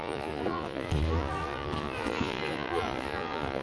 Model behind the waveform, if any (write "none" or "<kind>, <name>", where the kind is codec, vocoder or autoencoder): vocoder, Vocos